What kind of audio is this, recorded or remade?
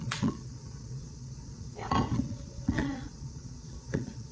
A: remade